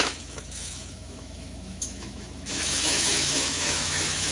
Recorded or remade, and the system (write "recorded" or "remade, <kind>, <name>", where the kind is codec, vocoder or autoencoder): remade, autoencoder, DAC-VAE